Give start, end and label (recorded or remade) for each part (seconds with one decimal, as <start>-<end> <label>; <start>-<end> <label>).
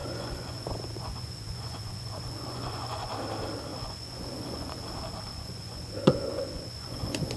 0.0-3.1 remade; 3.1-3.7 recorded; 3.7-4.8 remade; 4.8-5.3 recorded; 5.3-7.4 remade